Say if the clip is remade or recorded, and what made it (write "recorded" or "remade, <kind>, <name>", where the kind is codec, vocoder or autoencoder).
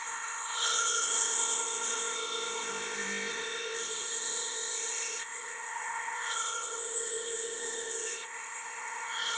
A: remade, codec, ZipCodec